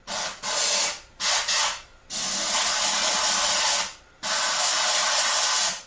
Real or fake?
real